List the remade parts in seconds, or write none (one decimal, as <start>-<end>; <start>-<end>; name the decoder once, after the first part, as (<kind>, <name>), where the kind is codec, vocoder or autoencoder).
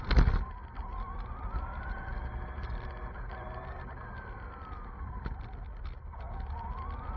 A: none